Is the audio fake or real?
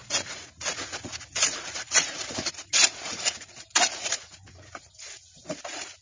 fake